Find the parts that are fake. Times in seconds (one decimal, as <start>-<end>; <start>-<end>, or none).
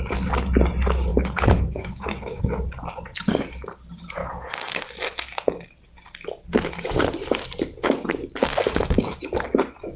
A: 1.1-2.4; 4.2-4.8; 8.4-9.2